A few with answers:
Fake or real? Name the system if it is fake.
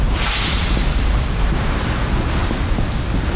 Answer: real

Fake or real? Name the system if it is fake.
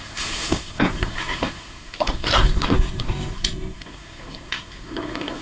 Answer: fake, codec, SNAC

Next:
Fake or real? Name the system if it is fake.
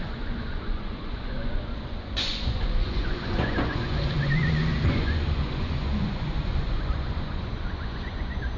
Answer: fake, vocoder, Vocos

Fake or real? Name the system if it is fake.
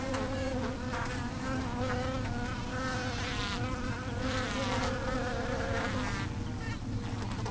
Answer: real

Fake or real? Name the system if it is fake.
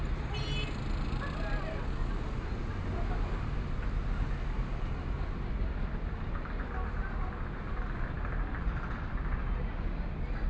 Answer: real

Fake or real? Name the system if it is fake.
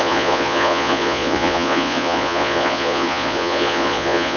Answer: fake, vocoder, Vocos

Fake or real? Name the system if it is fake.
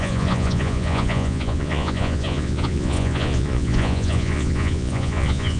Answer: fake, vocoder, Vocos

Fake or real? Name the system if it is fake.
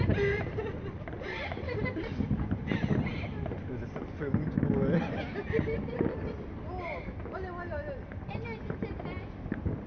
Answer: real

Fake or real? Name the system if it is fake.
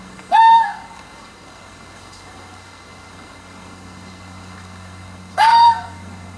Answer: fake, codec, SNAC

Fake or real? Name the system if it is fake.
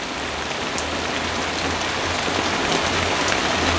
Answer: real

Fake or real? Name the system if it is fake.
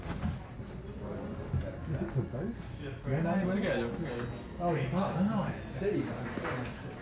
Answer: real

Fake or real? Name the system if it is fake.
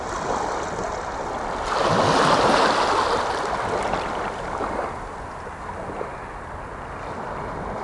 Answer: real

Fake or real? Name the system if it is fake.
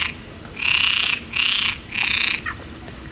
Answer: real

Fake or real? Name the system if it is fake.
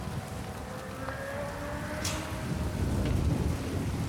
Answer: real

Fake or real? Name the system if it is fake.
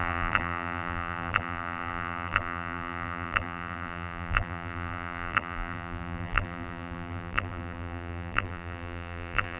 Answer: fake, vocoder, BigVGAN v2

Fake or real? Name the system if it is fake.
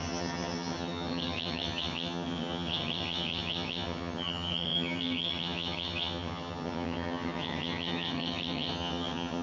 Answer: fake, vocoder, HiFi-GAN